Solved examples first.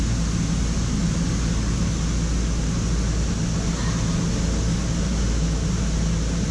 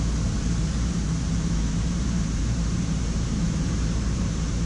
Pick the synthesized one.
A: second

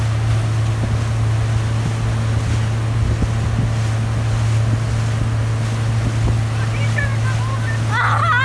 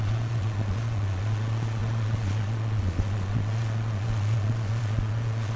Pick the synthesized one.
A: second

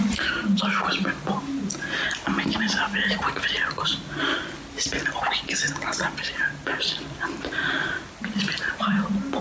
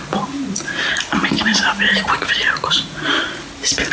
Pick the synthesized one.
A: second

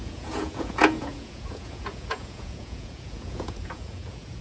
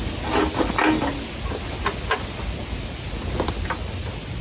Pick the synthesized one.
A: first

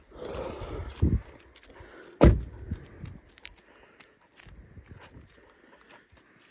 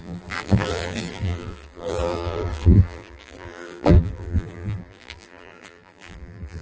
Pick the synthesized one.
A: second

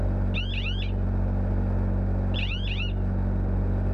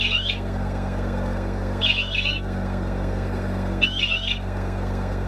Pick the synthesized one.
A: second